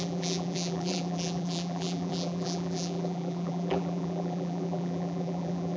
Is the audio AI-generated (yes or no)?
yes